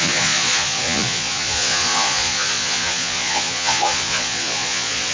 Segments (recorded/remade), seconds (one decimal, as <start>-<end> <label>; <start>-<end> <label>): 0.0-5.1 remade